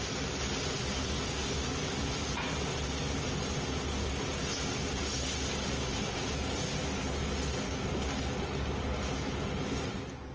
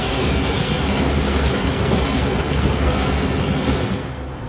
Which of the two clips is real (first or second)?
first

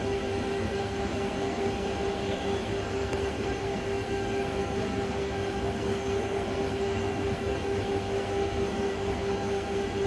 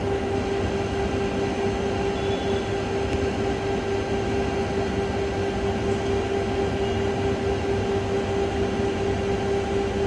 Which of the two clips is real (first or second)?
second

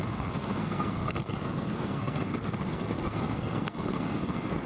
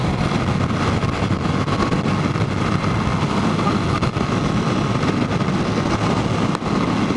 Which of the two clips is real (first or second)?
second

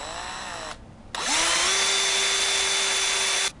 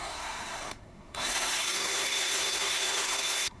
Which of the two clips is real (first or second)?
first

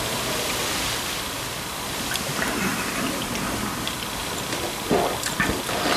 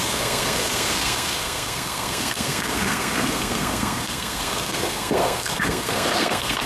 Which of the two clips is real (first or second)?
first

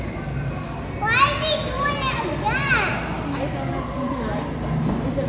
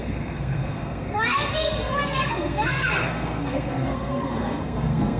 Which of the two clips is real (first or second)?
first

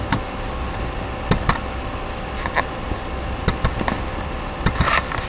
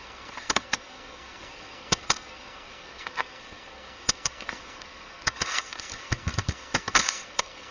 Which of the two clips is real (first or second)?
first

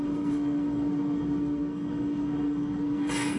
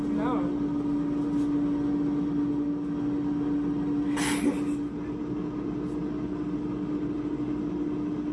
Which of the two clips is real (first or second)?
second